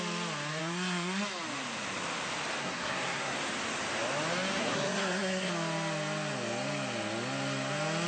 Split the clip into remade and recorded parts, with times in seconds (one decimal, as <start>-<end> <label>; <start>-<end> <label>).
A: 0.0-0.6 recorded; 0.6-1.2 remade; 1.2-2.6 recorded; 2.6-3.3 remade; 3.3-4.6 recorded; 4.6-5.5 remade; 5.5-8.1 recorded

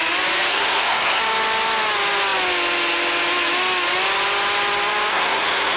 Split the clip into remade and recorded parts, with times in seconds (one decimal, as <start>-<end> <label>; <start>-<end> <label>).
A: 0.0-0.5 recorded; 0.5-1.2 remade; 1.2-5.1 recorded; 5.1-5.8 remade

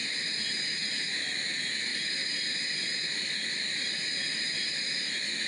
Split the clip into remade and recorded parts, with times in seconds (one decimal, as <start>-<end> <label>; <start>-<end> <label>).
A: 0.0-5.5 recorded

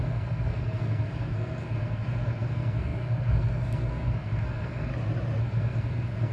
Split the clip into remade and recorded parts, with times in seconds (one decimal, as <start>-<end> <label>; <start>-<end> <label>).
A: 0.0-4.9 remade; 4.9-5.4 recorded; 5.4-6.3 remade

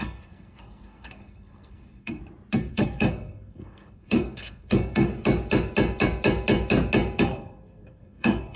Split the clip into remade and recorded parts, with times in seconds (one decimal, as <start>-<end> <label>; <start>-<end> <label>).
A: 0.0-2.2 remade; 2.2-2.7 recorded; 2.7-5.1 remade; 5.1-7.2 recorded; 7.2-8.6 remade

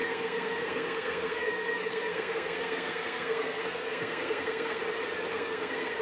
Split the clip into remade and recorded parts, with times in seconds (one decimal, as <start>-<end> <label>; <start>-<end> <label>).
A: 0.0-4.8 remade; 4.8-5.3 recorded; 5.3-6.0 remade

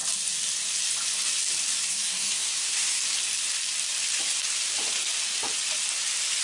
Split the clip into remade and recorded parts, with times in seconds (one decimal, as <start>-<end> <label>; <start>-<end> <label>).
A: 0.0-1.9 recorded; 1.9-3.0 remade; 3.0-6.4 recorded

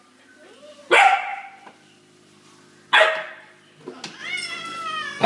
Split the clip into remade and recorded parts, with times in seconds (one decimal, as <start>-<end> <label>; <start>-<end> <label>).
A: 0.0-5.3 recorded